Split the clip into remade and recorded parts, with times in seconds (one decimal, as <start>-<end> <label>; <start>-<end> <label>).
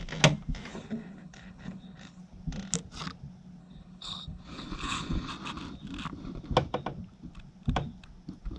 0.0-0.7 recorded; 0.7-2.2 remade; 2.2-3.6 recorded; 3.6-5.3 remade; 5.3-8.6 recorded